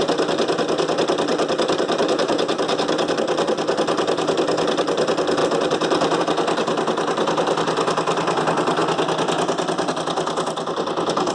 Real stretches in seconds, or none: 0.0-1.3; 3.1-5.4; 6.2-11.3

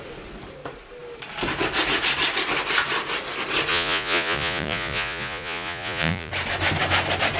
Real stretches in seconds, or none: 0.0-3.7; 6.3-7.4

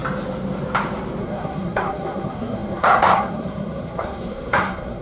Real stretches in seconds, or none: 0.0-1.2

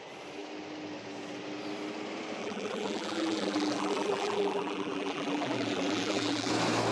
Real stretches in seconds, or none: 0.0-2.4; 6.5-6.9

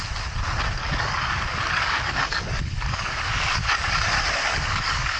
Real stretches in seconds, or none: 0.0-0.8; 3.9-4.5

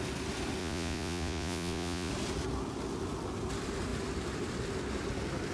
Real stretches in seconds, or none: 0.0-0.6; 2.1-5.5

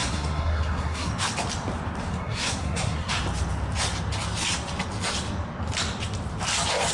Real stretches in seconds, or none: 1.1-2.1; 3.1-6.9

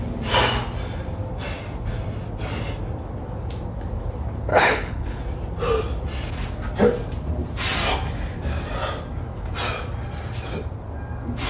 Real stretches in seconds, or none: 0.0-4.5; 5.2-11.5